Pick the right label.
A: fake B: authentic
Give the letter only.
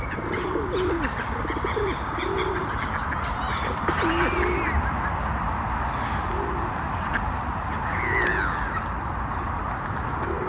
B